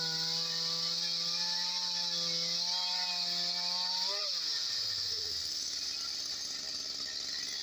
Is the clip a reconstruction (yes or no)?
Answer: no